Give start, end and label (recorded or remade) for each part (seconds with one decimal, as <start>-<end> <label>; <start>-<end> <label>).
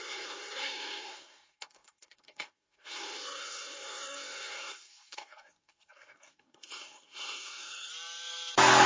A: 0.0-7.9 remade; 7.9-8.9 recorded